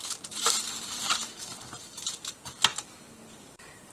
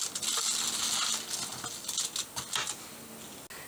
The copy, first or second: first